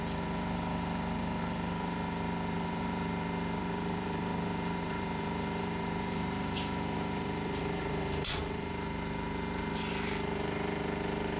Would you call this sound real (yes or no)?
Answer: no